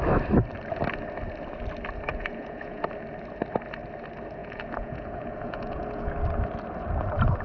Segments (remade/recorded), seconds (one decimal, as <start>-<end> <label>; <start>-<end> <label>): 0.0-2.1 recorded; 2.1-2.8 remade; 2.8-4.4 recorded; 4.4-6.1 remade; 6.1-7.4 recorded